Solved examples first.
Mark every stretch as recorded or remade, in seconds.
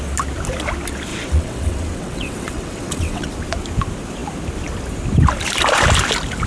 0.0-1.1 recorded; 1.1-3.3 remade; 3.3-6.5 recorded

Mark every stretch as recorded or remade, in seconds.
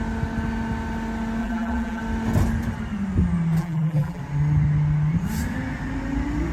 0.0-1.4 recorded; 1.4-2.0 remade; 2.0-3.6 recorded; 3.6-4.2 remade; 4.2-6.5 recorded